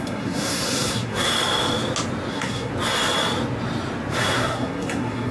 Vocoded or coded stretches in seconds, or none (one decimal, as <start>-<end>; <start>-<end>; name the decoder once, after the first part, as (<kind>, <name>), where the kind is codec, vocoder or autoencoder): 0.0-1.3 (codec, SNAC); 2.3-2.7; 4.2-5.3